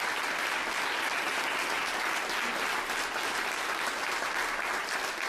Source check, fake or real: real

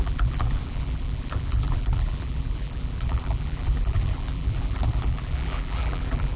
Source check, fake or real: fake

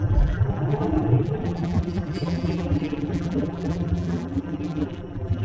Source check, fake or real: fake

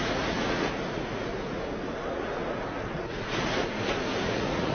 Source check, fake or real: fake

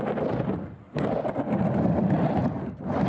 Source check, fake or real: real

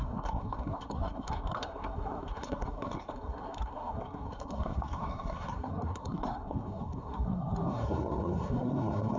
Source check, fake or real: fake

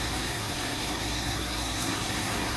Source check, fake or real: fake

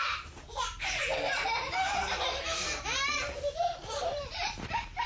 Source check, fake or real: fake